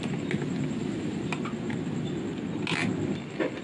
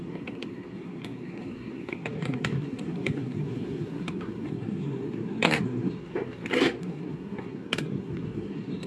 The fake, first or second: second